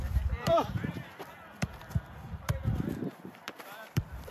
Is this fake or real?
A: fake